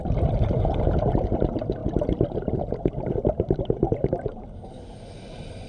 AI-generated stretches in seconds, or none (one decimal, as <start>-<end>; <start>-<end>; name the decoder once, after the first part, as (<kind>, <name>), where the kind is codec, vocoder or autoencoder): none